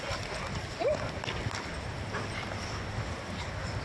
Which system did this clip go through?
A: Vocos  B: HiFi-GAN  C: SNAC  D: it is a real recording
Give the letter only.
D